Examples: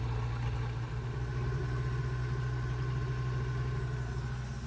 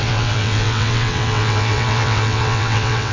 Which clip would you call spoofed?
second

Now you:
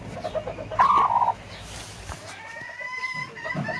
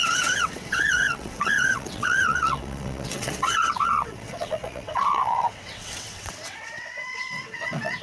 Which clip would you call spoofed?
second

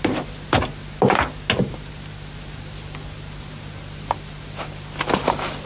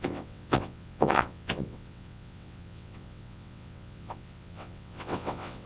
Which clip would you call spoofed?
second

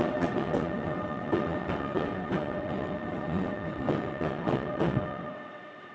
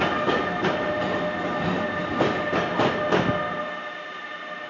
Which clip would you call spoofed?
first